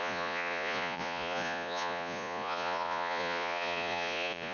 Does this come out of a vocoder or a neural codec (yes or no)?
yes